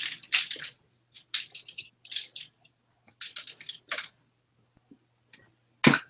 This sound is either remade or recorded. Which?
recorded